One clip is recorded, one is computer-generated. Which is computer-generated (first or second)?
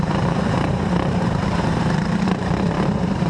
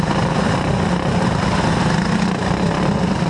first